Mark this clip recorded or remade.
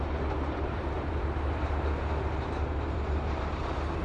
remade